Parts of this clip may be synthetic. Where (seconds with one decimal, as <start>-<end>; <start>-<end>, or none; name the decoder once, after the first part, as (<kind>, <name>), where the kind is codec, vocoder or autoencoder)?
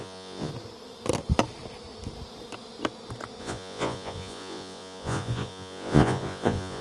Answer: 0.0-0.5 (vocoder, Vocos); 3.4-6.8